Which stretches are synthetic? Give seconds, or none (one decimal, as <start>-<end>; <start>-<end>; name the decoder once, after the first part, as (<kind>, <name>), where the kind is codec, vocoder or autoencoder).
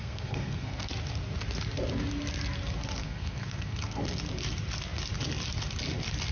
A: 0.0-0.9 (codec, SNAC); 3.0-4.0